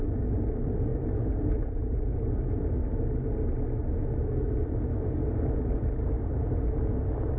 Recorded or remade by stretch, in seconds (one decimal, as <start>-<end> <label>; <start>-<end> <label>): 0.0-0.9 recorded; 0.9-1.6 remade; 1.6-7.4 recorded